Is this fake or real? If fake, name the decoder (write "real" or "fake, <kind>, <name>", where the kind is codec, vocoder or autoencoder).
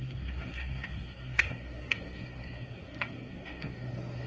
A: fake, codec, SNAC